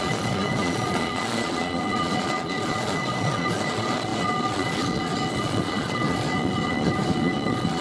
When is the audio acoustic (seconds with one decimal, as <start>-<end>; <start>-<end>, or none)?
none